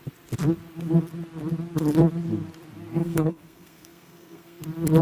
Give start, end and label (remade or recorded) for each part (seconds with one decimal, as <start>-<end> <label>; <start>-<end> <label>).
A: 0.0-3.0 recorded; 3.0-4.6 remade; 4.6-5.0 recorded